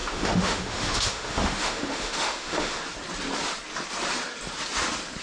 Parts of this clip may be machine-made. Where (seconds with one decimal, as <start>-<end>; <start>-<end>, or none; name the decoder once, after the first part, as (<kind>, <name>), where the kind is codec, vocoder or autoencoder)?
0.0-2.8 (autoencoder, DAC-VAE)